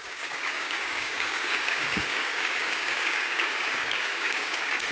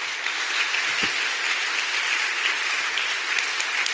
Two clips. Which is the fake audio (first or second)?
first